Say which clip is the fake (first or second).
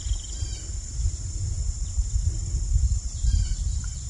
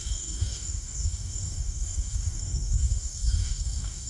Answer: second